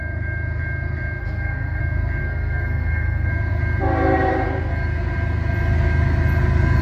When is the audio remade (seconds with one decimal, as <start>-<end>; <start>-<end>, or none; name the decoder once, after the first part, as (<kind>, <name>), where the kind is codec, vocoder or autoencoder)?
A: 1.2-1.8 (codec, SNAC); 2.2-3.3